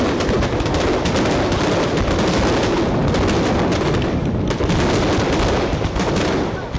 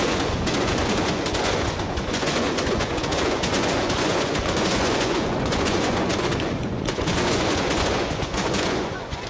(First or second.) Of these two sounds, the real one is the first